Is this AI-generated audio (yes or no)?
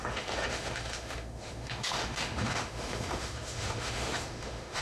yes